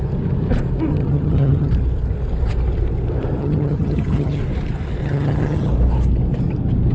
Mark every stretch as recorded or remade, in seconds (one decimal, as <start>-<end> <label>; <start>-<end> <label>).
0.0-0.9 recorded; 0.9-1.7 remade; 1.7-3.4 recorded; 3.4-4.4 remade; 4.4-5.0 recorded; 5.0-5.7 remade; 5.7-6.9 recorded